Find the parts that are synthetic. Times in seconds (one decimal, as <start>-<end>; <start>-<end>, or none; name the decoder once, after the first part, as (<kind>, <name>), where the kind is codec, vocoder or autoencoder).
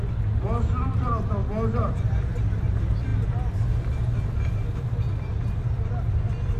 none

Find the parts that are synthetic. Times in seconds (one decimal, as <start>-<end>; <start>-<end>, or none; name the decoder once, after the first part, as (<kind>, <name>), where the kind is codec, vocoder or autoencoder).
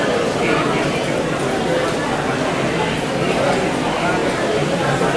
none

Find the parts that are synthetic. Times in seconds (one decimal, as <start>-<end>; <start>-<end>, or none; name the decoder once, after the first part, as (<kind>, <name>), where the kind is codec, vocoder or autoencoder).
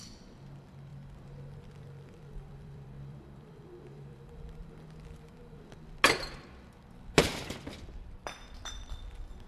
0.9-5.7 (vocoder, BigVGAN v2); 7.2-8.4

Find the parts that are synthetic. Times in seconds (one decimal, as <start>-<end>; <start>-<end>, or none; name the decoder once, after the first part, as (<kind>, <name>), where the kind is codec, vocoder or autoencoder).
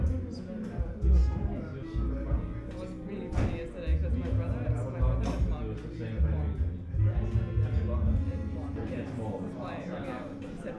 8.3-10.8 (vocoder, BigVGAN v2)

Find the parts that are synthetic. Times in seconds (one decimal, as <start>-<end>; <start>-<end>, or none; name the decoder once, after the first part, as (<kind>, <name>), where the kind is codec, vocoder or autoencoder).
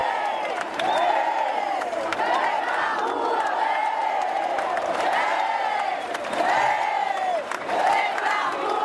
0.0-2.1 (vocoder, BigVGAN v2); 3.8-6.3